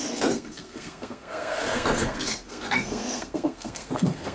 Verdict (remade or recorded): remade